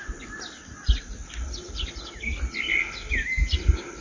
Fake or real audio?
real